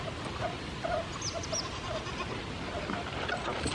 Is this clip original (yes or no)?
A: yes